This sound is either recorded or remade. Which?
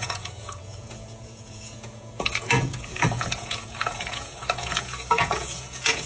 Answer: remade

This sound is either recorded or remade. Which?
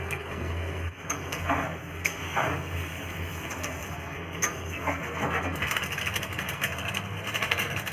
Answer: remade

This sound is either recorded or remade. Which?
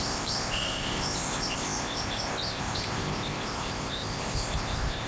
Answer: remade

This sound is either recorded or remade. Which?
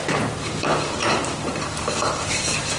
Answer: recorded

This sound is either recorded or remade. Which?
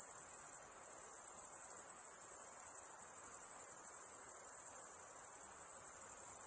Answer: recorded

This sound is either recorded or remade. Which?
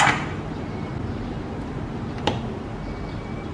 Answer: remade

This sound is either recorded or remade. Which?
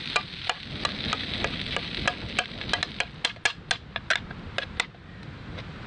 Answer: recorded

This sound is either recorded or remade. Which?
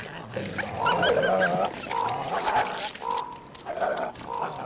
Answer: recorded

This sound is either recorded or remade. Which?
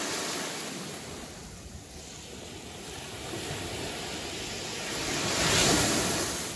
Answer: recorded